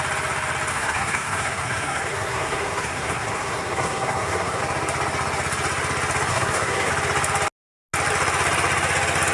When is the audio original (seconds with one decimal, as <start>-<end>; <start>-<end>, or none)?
0.0-0.7; 4.6-6.3; 6.9-9.3